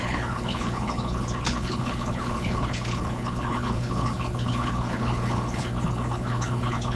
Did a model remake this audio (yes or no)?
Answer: yes